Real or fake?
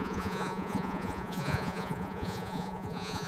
fake